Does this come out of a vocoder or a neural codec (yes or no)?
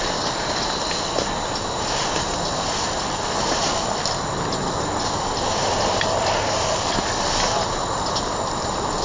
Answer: no